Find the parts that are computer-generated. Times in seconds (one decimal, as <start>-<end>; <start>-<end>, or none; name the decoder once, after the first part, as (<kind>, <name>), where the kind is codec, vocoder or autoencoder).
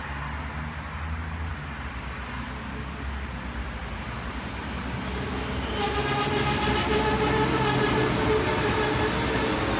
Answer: none